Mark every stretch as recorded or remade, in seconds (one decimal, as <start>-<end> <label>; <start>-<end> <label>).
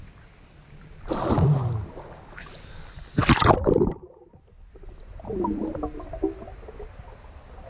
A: 0.0-7.7 recorded